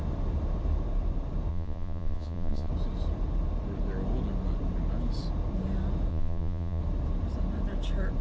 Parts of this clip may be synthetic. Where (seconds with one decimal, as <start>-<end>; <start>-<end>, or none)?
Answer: 1.5-2.7; 6.1-6.8